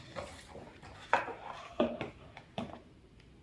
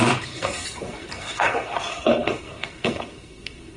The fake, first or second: second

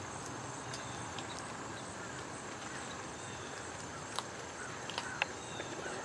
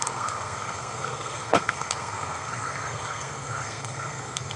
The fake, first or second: second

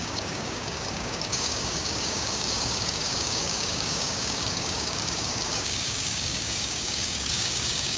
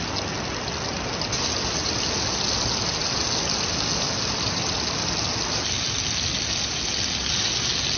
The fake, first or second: first